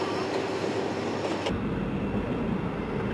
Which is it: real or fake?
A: real